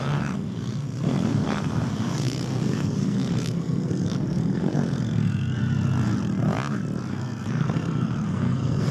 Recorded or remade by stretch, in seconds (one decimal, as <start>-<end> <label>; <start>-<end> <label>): 0.0-5.6 remade; 5.6-7.1 recorded; 7.1-8.9 remade